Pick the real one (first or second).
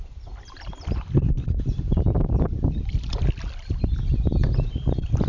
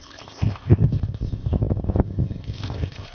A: first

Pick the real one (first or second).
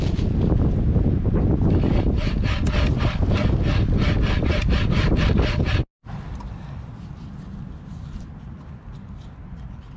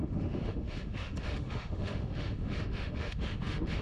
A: first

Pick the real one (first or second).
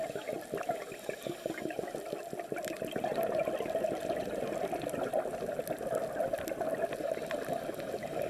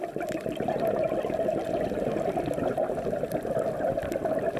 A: first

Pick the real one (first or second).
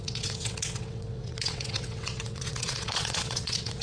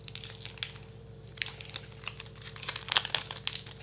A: second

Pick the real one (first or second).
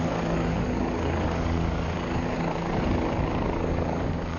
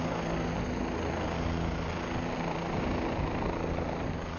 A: second